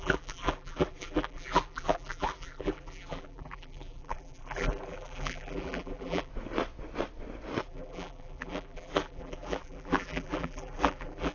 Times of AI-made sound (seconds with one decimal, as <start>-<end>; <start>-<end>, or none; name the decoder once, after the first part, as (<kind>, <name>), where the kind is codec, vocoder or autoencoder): 0.0-6.3 (vocoder, BigVGAN v2); 7.6-11.3